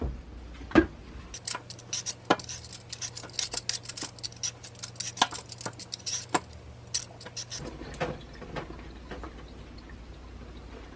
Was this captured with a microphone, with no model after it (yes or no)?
yes